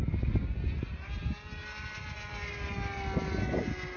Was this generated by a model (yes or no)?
no